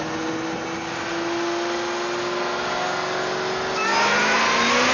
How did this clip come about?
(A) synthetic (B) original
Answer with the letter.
B